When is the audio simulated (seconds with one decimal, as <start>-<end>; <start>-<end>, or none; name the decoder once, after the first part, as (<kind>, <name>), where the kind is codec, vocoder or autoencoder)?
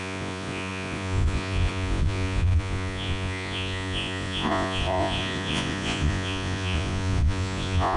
0.0-8.0 (vocoder, Vocos)